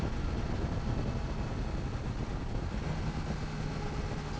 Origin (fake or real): real